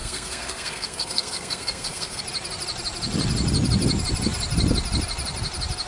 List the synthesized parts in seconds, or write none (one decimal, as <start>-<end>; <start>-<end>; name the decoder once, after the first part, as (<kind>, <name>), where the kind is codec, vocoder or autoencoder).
0.0-2.2 (codec, SNAC)